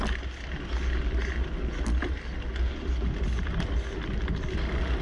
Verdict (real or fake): real